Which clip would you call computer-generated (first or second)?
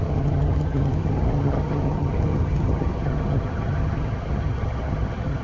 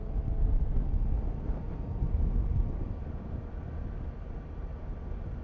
first